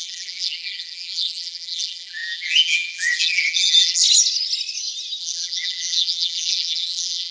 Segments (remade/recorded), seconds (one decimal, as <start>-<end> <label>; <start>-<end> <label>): 0.0-4.0 remade; 4.0-5.2 recorded; 5.2-7.3 remade